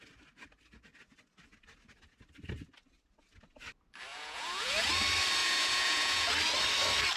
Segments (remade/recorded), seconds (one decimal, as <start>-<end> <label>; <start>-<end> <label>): 0.0-4.1 recorded; 4.1-4.9 remade; 4.9-5.4 recorded; 5.4-6.3 remade; 6.3-7.2 recorded